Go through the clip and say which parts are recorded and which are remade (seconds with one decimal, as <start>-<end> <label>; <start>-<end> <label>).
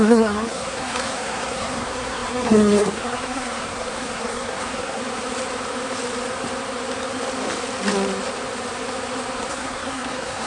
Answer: 0.0-5.0 remade; 5.0-9.5 recorded; 9.5-10.5 remade